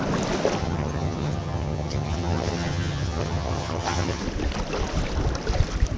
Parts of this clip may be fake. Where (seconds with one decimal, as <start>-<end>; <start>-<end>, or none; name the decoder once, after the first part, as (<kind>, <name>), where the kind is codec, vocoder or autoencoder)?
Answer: 0.6-4.2 (vocoder, HiFi-GAN)